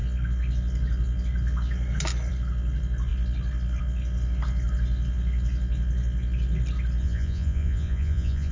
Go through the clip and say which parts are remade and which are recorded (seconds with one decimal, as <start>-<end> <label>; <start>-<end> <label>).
0.0-7.0 recorded; 7.0-8.5 remade

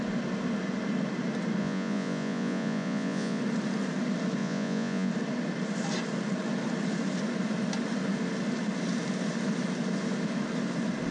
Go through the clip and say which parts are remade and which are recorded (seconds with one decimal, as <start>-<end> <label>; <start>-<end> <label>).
0.0-1.6 recorded; 1.6-3.4 remade; 3.4-4.4 recorded; 4.4-5.1 remade; 5.1-11.1 recorded

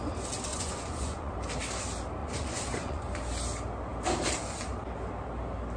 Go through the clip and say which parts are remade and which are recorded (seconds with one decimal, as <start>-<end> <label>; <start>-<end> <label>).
0.0-0.5 recorded; 0.5-1.3 remade; 1.3-2.2 recorded; 2.2-3.0 remade; 3.0-5.8 recorded

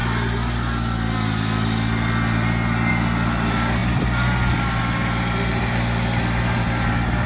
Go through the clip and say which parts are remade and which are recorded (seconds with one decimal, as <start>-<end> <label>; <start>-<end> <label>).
0.0-7.3 recorded

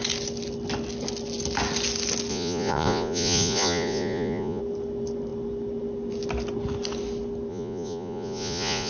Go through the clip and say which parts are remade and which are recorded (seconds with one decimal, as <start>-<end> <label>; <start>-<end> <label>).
0.0-2.3 recorded; 2.3-4.6 remade; 4.6-7.5 recorded; 7.5-8.9 remade

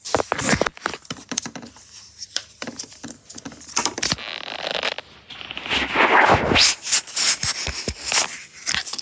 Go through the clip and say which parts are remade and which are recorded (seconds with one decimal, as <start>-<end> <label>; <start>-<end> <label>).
0.0-9.0 recorded